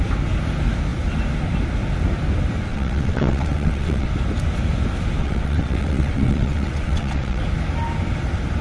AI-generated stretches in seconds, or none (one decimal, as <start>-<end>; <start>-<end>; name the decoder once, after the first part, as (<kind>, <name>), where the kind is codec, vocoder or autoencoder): 2.7-4.1 (vocoder, WaveNeXt); 5.2-7.4